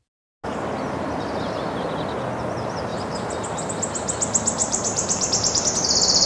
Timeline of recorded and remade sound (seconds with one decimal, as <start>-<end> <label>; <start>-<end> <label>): 0.0-2.9 recorded; 2.9-3.7 remade; 3.7-4.6 recorded; 4.6-5.6 remade; 5.6-6.3 recorded